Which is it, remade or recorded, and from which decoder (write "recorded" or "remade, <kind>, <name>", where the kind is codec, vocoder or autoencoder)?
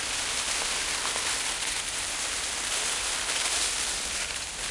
recorded